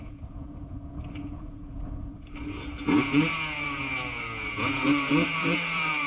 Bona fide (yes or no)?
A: no